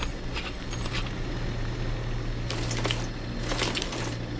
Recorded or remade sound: recorded